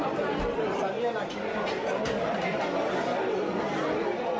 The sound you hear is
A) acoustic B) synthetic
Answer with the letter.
A